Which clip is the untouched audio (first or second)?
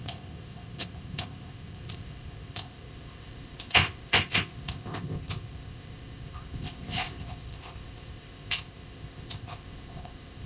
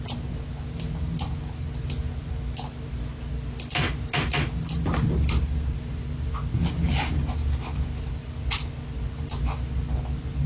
second